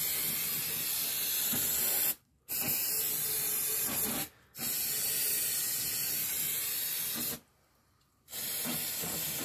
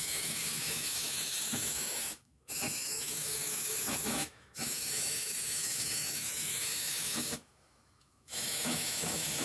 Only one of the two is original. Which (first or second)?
first